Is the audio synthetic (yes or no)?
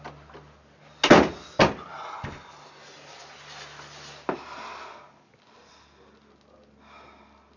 no